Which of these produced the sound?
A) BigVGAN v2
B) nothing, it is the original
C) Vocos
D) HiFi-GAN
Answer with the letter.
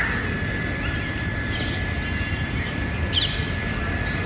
B